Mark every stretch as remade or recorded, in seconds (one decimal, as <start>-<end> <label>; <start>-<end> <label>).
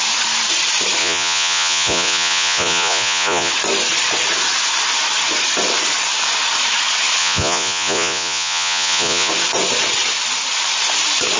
0.0-1.0 recorded; 1.0-3.5 remade; 3.5-7.2 recorded; 7.2-9.3 remade; 9.3-11.4 recorded